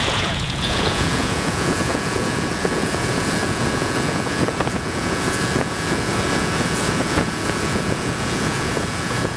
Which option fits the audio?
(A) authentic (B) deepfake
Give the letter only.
B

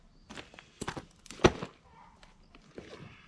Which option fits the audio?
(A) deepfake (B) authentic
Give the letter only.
B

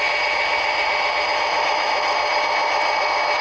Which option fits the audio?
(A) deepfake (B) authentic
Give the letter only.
B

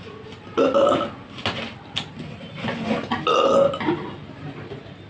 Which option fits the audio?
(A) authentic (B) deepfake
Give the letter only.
A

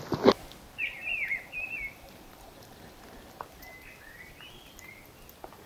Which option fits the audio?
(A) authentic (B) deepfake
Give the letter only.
A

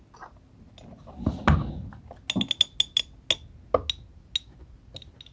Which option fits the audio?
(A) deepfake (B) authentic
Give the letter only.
B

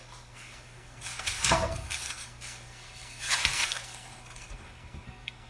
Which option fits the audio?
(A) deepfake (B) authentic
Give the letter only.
A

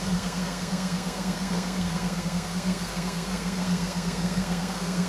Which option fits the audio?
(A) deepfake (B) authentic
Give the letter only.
A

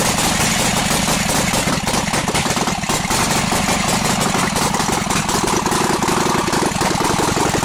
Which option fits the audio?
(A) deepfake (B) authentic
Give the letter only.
B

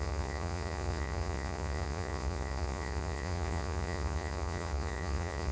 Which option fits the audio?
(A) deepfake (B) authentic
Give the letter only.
A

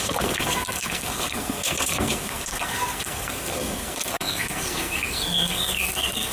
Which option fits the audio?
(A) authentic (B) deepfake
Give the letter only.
B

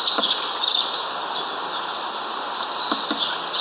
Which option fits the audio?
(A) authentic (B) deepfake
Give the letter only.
A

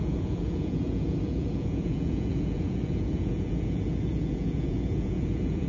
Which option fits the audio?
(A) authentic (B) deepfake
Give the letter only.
B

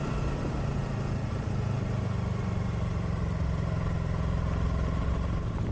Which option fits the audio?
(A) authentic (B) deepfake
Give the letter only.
A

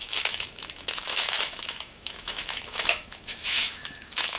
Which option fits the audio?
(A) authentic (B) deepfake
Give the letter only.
B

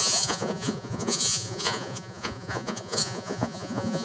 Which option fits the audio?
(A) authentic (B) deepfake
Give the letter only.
B